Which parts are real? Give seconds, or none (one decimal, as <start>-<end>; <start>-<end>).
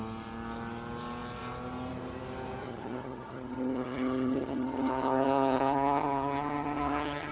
0.0-2.6